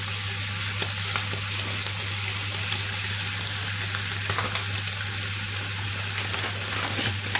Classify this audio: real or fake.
real